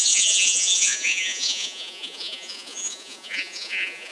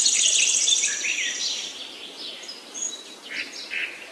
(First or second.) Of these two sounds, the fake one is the first